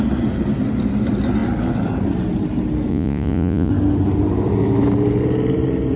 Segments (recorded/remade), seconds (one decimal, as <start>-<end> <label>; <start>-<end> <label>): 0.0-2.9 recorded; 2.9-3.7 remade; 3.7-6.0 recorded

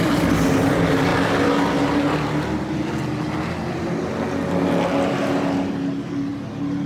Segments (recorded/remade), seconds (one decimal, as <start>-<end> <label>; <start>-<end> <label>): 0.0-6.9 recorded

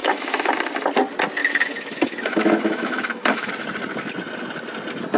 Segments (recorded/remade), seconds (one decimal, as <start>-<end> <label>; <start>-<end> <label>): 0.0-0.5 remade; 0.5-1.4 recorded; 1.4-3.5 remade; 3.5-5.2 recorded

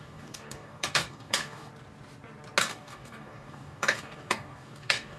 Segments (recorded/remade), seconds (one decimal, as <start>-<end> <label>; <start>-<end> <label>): 0.0-1.7 remade; 1.7-2.6 recorded; 2.6-5.2 remade

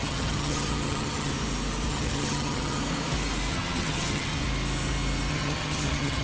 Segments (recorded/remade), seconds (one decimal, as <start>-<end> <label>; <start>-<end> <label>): 0.0-1.3 remade; 1.3-1.9 recorded; 1.9-2.8 remade; 2.8-3.5 recorded; 3.5-4.3 remade; 4.3-5.3 recorded; 5.3-6.2 remade

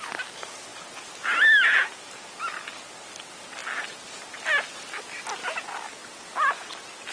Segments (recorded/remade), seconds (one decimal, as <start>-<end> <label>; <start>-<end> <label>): 0.0-7.1 recorded